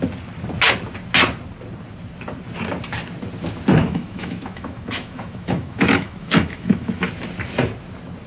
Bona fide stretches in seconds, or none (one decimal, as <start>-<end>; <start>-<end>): 0.0-3.8; 7.1-8.3